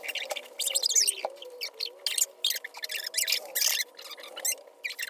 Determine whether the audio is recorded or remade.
recorded